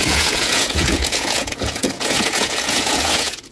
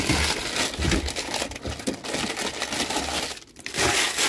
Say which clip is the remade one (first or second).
first